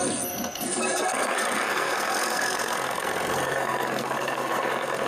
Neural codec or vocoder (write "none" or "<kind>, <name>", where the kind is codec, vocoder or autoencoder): codec, SNAC